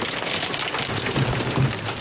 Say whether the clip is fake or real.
real